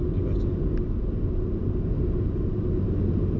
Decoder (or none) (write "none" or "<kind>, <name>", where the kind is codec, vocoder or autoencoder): none